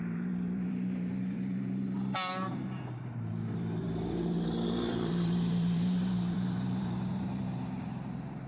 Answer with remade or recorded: remade